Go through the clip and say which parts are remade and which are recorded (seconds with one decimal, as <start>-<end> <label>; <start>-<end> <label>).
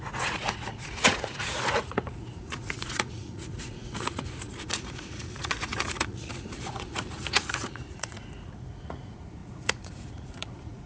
0.0-10.9 remade